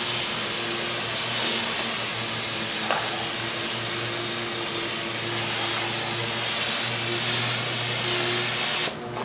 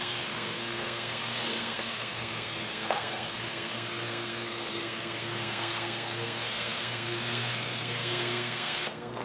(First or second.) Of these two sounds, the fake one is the second